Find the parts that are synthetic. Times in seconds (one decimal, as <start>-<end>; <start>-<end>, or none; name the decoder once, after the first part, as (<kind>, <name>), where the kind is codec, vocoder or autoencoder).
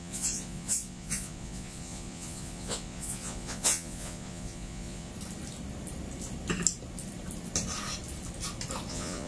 0.0-5.1 (vocoder, Vocos); 8.9-9.3